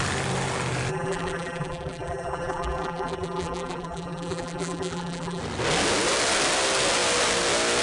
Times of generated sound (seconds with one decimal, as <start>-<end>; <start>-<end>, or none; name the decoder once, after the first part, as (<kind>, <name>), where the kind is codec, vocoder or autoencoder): 0.9-5.4 (vocoder, BigVGAN v2)